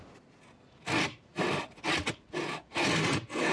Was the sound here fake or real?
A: real